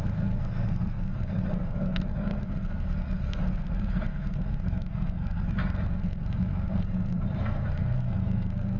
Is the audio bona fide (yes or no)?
no